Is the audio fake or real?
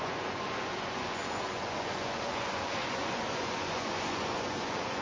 fake